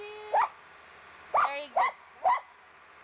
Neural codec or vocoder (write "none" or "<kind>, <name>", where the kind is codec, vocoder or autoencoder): none